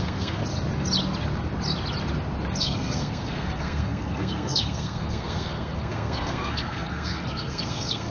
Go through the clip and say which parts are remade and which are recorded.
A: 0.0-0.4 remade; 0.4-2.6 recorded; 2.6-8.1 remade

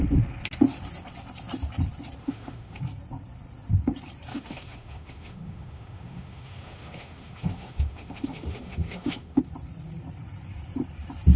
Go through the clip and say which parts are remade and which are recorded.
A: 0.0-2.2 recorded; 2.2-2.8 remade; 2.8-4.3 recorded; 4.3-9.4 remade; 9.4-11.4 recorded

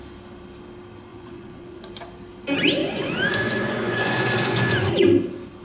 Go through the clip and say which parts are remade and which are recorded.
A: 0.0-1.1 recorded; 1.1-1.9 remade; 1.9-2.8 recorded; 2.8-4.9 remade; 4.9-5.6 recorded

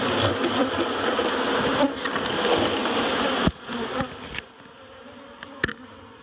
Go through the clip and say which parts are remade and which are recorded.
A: 0.0-6.2 recorded

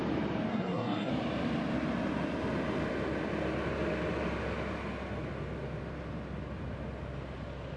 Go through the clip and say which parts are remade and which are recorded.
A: 0.0-0.5 recorded; 0.5-1.1 remade; 1.1-7.8 recorded

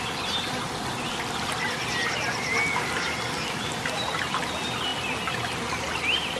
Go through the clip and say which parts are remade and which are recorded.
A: 0.0-6.4 recorded

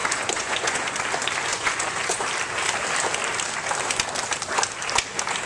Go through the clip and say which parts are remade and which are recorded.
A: 0.0-1.0 remade; 1.0-1.5 recorded; 1.5-2.2 remade; 2.2-5.5 recorded

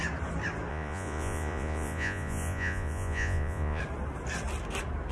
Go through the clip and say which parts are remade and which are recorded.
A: 0.0-0.7 recorded; 0.7-3.8 remade; 3.8-5.1 recorded